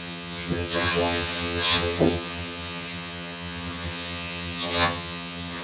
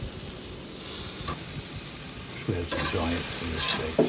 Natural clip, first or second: second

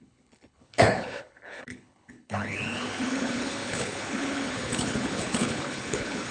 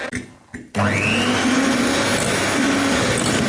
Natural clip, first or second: second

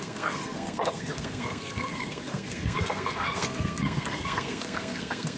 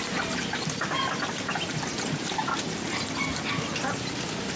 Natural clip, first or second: second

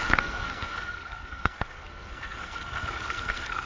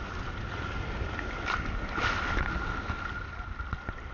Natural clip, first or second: second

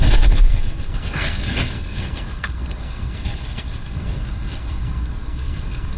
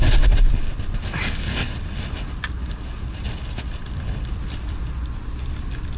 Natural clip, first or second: second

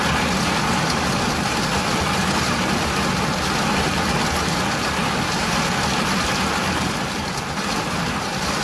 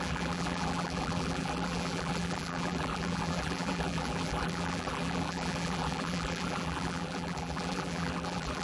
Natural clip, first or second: first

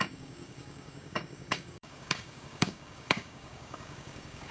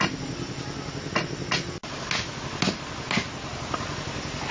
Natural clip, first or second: second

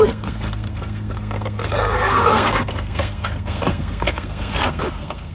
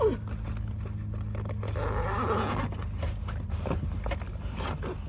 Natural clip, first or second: second